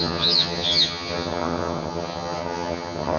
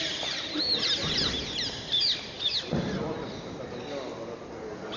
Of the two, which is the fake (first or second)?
first